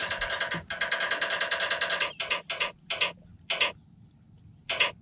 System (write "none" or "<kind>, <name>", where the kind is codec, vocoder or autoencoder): none